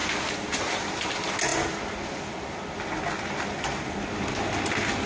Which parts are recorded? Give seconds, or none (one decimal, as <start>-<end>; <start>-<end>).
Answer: 0.0-5.1